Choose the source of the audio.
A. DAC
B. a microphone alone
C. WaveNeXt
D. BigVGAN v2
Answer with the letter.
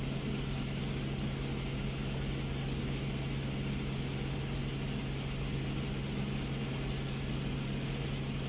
B